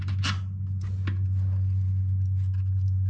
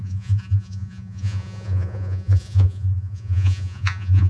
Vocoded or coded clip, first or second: second